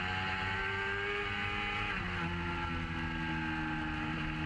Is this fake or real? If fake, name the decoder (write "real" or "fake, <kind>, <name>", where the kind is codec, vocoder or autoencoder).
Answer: real